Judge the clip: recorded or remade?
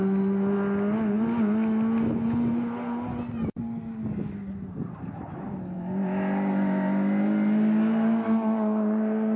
recorded